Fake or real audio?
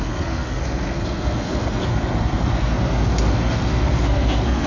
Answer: fake